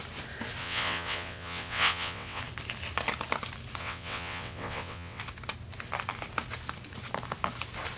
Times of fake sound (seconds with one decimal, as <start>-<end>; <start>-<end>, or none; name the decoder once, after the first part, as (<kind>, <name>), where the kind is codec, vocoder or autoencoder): 0.6-2.4 (vocoder, WaveNeXt); 3.8-5.2